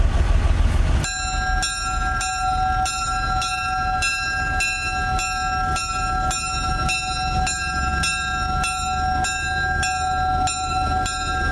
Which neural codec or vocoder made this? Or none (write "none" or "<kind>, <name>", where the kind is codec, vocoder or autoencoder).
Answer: none